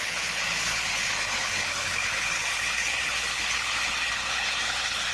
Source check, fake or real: fake